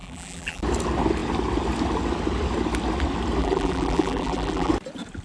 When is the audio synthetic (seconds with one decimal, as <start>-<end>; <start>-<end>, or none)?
0.0-0.6; 3.4-4.7